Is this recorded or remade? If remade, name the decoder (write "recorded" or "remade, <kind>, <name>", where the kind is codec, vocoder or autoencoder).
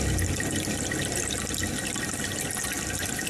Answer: recorded